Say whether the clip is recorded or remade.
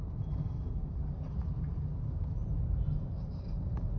recorded